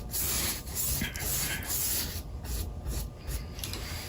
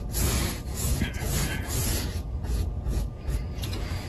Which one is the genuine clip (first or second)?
first